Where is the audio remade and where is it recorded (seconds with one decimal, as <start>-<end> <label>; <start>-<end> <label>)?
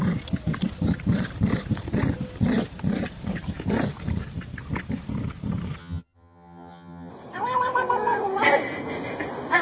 0.0-5.8 recorded; 5.8-7.1 remade; 7.1-9.6 recorded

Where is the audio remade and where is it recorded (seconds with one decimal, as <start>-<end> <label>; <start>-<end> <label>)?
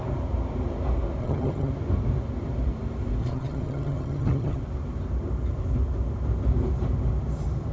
0.0-1.2 recorded; 1.2-1.7 remade; 1.7-3.2 recorded; 3.2-4.6 remade; 4.6-7.7 recorded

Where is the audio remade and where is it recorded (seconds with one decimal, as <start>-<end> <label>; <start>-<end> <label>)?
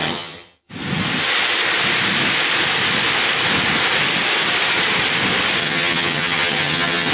0.0-0.7 remade; 0.7-5.6 recorded; 5.6-7.1 remade